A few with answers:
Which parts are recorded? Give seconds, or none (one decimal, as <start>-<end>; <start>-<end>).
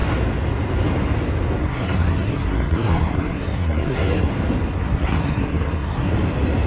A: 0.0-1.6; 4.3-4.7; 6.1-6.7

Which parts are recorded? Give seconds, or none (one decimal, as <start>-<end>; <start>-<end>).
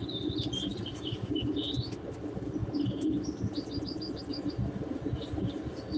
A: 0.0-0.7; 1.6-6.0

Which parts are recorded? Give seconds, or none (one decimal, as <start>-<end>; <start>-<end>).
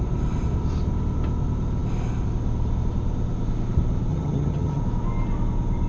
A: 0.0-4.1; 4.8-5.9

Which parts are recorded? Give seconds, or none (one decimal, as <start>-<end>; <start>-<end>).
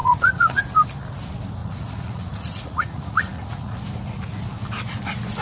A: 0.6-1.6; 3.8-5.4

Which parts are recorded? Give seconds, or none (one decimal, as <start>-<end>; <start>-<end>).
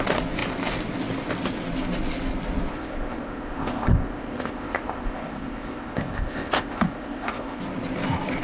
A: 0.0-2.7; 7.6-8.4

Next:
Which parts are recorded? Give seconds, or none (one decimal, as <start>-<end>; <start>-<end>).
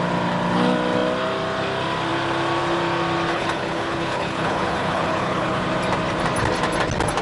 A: 0.0-3.3; 5.6-7.2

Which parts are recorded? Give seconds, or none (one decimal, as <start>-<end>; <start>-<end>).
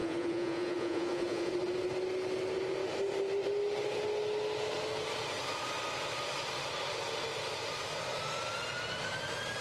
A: 1.5-9.6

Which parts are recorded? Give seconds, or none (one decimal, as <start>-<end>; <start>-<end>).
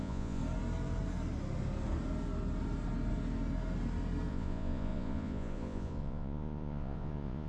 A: 0.4-4.3